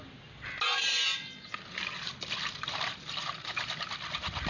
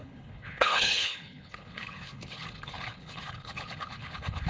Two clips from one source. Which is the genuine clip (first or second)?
first